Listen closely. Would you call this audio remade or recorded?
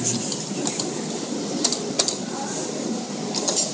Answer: recorded